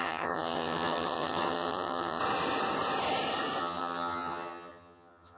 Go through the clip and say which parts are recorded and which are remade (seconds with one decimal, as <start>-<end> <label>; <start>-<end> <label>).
0.0-2.2 remade; 2.2-3.6 recorded; 3.6-5.4 remade